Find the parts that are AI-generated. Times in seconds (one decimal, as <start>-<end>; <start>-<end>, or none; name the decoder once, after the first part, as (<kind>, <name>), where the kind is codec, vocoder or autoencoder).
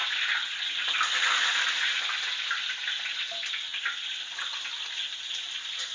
none